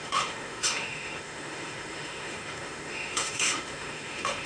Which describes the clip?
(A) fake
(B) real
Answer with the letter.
A